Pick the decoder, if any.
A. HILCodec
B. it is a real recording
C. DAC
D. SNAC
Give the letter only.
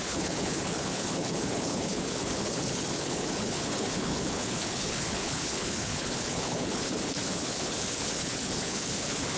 A